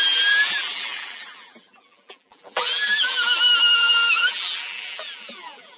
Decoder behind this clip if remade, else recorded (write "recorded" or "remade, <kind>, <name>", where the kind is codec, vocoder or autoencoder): remade, vocoder, BigVGAN v2